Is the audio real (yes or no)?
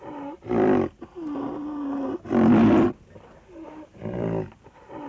no